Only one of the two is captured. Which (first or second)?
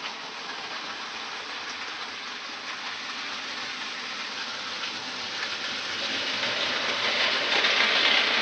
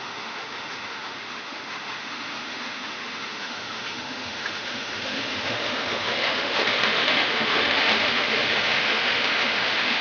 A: first